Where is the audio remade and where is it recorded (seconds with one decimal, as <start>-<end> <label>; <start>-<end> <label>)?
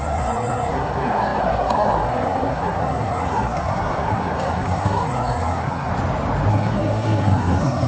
0.0-5.9 remade; 5.9-6.5 recorded; 6.5-7.9 remade